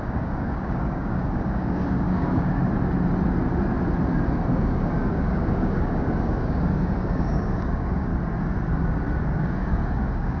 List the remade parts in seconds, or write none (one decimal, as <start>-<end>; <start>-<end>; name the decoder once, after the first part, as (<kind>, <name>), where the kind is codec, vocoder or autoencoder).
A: 0.0-2.6 (codec, DAC); 4.5-8.1; 9.2-10.4

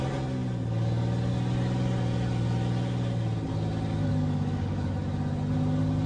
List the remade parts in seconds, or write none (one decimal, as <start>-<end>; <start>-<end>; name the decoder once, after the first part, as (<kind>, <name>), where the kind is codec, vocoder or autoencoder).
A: 4.1-4.9 (codec, DAC)

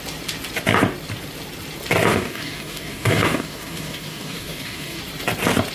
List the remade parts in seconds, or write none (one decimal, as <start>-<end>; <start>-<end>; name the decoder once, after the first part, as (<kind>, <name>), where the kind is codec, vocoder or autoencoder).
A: 2.1-5.0 (codec, DAC)

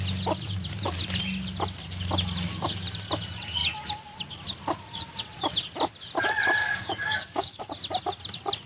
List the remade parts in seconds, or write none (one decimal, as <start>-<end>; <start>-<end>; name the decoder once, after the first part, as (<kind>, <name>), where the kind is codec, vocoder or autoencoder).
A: 6.6-7.6 (codec, DAC)

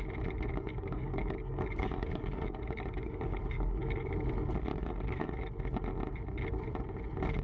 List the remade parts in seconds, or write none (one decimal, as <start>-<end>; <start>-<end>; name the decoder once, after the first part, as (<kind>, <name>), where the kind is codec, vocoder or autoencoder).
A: 0.5-4.1 (codec, DAC); 4.7-5.5

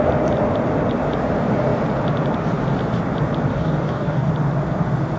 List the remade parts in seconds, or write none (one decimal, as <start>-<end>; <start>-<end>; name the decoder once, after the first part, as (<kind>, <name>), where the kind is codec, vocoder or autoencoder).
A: 3.5-4.3 (codec, DAC)

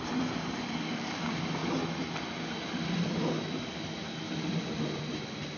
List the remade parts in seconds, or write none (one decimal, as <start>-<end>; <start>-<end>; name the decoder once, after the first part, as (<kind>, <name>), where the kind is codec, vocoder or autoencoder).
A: none

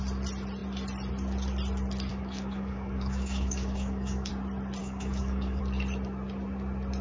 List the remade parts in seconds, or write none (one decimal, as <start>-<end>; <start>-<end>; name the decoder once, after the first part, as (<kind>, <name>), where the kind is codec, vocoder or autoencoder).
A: 2.1-4.3 (codec, DAC); 4.8-5.6